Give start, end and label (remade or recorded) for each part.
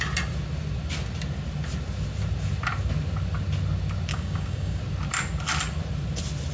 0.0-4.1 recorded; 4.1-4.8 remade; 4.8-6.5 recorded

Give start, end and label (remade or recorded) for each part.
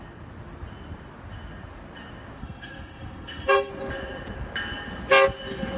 0.0-2.4 recorded; 2.4-3.7 remade; 3.7-5.8 recorded